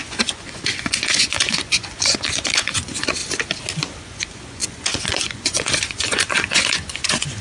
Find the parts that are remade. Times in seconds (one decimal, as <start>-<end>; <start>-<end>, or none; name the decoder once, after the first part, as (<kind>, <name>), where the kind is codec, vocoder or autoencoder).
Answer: 0.0-3.2 (vocoder, Vocos); 4.0-7.4